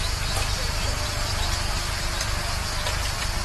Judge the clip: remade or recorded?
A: recorded